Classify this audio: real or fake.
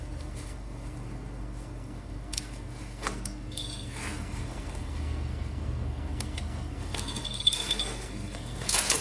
fake